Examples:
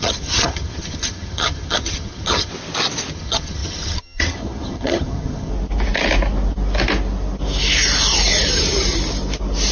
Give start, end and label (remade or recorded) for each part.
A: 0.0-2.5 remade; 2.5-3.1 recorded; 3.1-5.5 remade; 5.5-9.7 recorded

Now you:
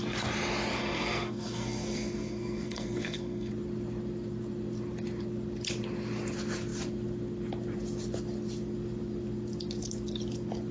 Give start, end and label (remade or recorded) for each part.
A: 0.0-0.8 recorded; 0.8-3.5 remade; 3.5-10.7 recorded

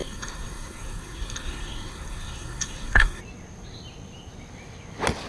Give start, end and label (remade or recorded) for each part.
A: 0.0-3.2 remade; 3.2-5.3 recorded

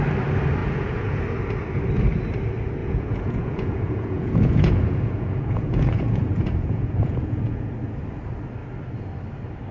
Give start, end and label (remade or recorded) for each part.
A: 0.0-0.6 recorded; 0.6-1.2 remade; 1.2-2.8 recorded; 2.8-7.7 remade; 7.7-9.7 recorded

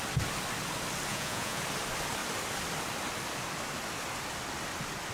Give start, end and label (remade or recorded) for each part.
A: 0.0-1.1 recorded; 1.1-1.6 remade; 1.6-5.1 recorded

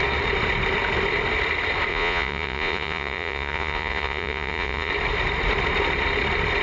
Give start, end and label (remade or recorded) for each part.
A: 0.0-1.9 recorded; 1.9-4.9 remade; 4.9-6.6 recorded

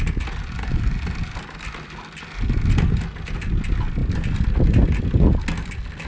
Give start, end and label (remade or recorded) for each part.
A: 0.0-6.1 recorded

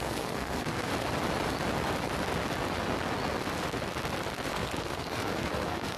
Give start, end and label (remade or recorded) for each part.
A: 0.0-0.9 remade; 0.9-4.5 recorded; 4.5-6.0 remade